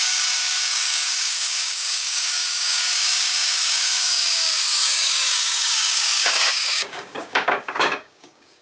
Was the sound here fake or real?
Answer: fake